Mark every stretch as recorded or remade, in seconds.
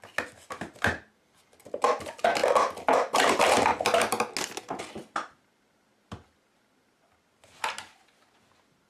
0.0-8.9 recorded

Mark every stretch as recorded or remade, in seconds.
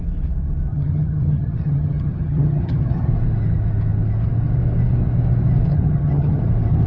0.0-0.7 recorded; 0.7-3.1 remade; 3.1-5.7 recorded; 5.7-6.4 remade; 6.4-6.9 recorded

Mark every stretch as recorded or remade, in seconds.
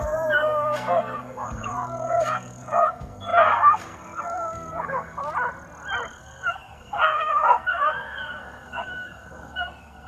0.0-5.2 remade; 5.2-6.1 recorded; 6.1-10.1 remade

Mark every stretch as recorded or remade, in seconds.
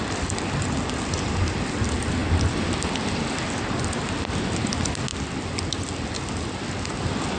0.0-7.4 recorded